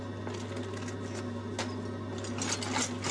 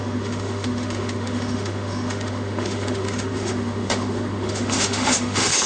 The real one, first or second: first